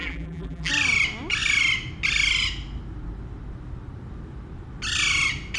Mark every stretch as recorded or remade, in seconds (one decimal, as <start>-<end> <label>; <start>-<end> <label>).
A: 0.0-0.7 remade; 0.7-5.6 recorded